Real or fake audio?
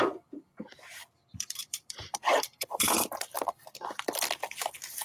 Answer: fake